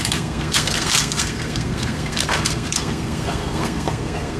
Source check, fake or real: fake